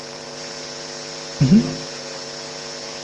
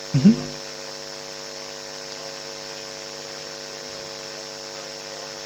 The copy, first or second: first